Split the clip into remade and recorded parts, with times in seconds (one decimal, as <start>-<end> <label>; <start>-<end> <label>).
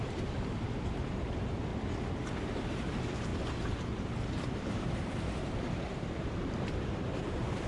0.0-1.7 remade; 1.7-2.3 recorded; 2.3-7.7 remade